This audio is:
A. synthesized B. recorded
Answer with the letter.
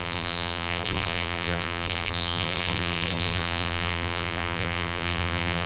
A